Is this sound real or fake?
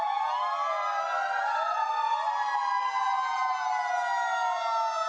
real